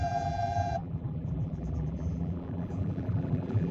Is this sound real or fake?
fake